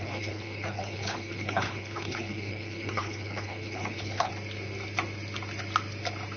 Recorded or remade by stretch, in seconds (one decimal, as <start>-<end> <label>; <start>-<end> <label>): 0.0-4.3 remade; 4.3-6.4 recorded